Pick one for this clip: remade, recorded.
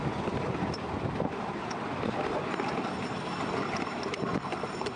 recorded